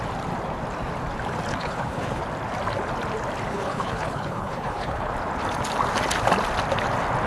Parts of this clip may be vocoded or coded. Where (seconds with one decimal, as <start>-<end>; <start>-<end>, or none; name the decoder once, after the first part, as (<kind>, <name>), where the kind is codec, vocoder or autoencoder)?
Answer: 1.5-2.2 (codec, HILCodec); 3.5-5.1